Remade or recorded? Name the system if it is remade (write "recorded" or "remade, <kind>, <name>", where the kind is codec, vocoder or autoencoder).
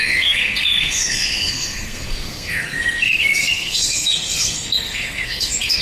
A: remade, codec, SNAC